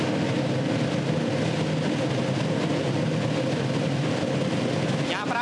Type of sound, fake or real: real